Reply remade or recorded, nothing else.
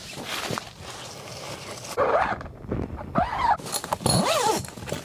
recorded